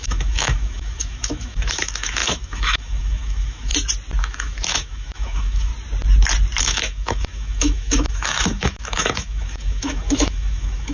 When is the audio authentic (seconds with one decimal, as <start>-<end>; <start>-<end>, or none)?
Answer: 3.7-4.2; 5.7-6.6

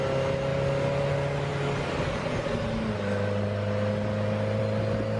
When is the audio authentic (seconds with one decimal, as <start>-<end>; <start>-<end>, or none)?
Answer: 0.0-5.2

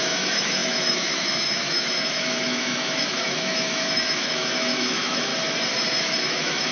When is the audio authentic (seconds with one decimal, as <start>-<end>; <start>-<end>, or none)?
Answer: 5.3-6.0

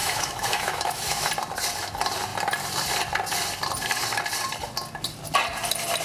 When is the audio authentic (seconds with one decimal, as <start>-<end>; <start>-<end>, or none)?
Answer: 1.3-6.0